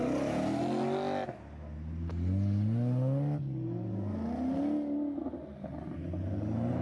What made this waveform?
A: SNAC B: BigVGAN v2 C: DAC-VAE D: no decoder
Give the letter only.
D